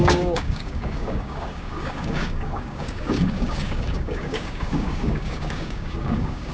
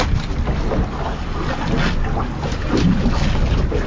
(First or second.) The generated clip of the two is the first